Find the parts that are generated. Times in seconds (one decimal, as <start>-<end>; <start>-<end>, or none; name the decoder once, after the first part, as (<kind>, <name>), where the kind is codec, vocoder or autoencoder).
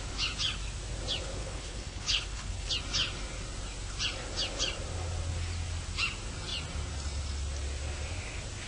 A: 1.4-2.7 (codec, HILCodec)